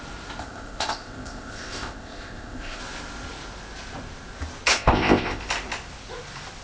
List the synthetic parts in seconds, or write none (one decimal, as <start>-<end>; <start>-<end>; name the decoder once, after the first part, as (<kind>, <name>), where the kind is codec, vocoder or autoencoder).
0.4-2.8 (codec, ZipCodec); 4.7-5.4